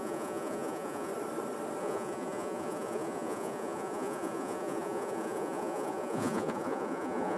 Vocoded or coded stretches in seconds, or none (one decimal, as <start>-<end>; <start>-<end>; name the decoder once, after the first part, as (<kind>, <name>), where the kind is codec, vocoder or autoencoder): 0.0-1.1 (vocoder, Vocos); 1.8-7.4